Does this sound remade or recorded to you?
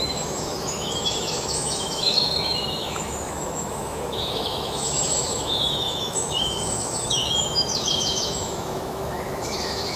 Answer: remade